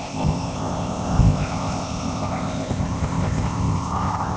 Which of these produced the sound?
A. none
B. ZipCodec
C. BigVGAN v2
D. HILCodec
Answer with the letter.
B